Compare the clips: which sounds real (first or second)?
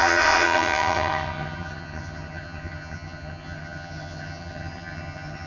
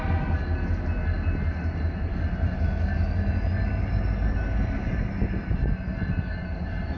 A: second